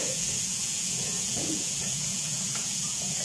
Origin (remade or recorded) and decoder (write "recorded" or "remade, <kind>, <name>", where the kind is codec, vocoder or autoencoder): remade, vocoder, Vocos